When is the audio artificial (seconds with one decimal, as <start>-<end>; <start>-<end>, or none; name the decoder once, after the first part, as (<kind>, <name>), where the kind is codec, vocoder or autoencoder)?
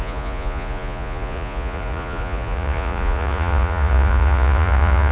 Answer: 0.0-5.1 (vocoder, Vocos)